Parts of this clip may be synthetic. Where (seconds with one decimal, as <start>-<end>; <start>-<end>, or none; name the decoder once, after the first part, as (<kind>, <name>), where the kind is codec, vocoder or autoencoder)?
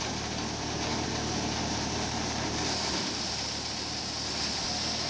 0.9-4.0 (vocoder, BigVGAN v2)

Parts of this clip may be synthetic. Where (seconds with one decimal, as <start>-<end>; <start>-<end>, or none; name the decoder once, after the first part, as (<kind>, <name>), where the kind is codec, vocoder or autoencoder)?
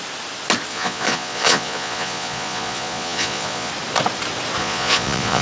0.7-3.7 (vocoder, Vocos); 4.6-5.4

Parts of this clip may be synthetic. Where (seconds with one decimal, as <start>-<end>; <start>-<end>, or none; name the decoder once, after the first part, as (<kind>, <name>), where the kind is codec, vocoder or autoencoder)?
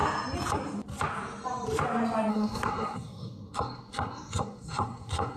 2.3-5.4 (codec, SNAC)